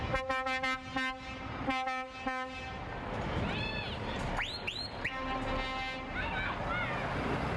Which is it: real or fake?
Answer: real